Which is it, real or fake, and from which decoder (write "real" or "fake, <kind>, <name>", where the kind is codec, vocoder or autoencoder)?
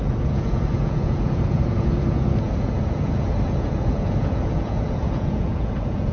fake, vocoder, Vocos